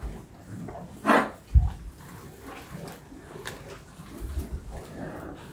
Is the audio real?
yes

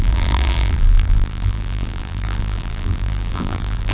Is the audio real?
no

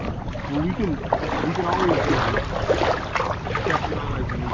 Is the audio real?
yes